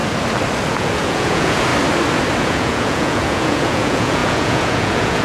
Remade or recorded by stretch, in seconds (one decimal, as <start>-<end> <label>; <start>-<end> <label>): 0.0-0.7 recorded; 0.7-1.7 remade; 1.7-2.4 recorded; 2.4-5.2 remade